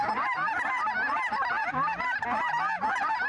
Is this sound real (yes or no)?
yes